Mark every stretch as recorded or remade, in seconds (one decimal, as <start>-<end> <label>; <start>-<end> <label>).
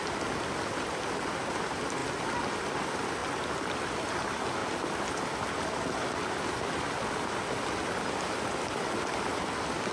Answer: 0.0-9.9 recorded